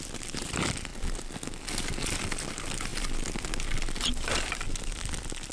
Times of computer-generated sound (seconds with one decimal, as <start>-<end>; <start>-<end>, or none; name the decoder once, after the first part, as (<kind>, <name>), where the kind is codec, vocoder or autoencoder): none